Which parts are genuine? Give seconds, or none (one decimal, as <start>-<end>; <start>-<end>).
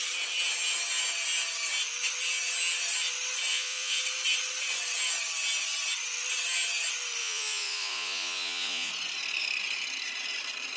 0.0-3.5; 4.0-7.2; 8.9-10.8